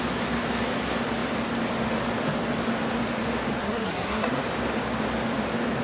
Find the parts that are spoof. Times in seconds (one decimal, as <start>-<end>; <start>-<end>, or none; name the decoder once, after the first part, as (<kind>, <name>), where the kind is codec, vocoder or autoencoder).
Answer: 3.6-4.4 (codec, SNAC)